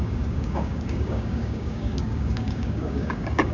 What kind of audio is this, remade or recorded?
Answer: remade